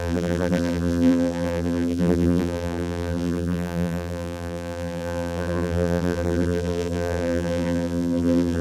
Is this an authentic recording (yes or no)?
no